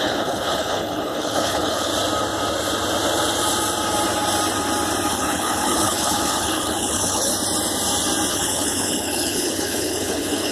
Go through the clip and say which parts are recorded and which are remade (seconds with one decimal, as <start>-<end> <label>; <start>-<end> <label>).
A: 0.0-1.9 remade; 1.9-5.1 recorded; 5.1-7.3 remade; 7.3-8.3 recorded; 8.3-10.5 remade